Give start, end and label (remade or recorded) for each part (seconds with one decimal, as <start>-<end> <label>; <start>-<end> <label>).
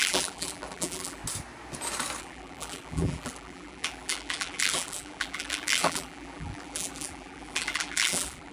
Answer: 0.0-1.2 remade; 1.2-2.2 recorded; 2.2-8.5 remade